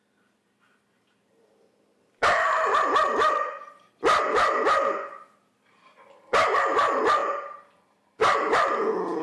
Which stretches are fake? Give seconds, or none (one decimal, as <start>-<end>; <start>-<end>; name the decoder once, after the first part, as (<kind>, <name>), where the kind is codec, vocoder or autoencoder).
none